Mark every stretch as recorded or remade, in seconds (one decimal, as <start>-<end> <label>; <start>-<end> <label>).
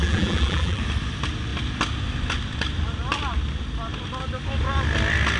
0.0-0.8 remade; 0.8-5.4 recorded